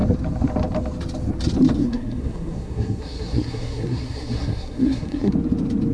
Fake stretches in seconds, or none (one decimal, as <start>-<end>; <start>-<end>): 1.8-5.3